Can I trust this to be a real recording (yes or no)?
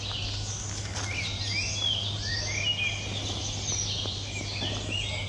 yes